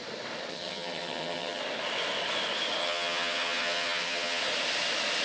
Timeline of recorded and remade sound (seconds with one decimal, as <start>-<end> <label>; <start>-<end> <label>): 0.0-0.5 recorded; 0.5-1.6 remade; 1.6-2.8 recorded; 2.8-4.4 remade; 4.4-5.2 recorded

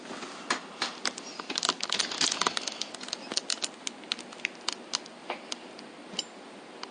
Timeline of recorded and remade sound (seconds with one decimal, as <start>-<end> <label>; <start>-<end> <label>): 0.0-6.9 recorded

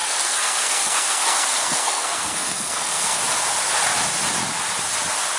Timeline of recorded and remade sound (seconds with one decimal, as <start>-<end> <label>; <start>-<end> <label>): 0.0-3.2 remade; 3.2-5.4 recorded

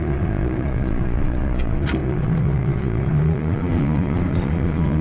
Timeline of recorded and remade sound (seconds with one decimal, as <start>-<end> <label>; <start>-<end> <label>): 0.0-5.0 remade

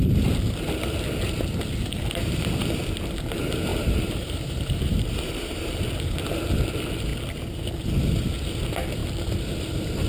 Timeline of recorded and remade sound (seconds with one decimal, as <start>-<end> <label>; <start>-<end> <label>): 0.0-3.7 recorded; 3.7-5.3 remade; 5.3-10.1 recorded